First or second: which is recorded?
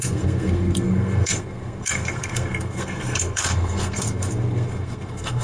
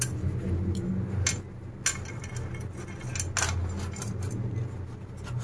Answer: second